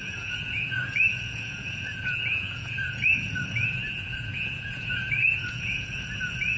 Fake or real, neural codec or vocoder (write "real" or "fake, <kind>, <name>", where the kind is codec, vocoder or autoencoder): fake, vocoder, Vocos